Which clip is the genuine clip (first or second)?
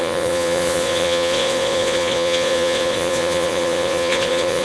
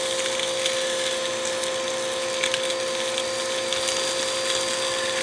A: second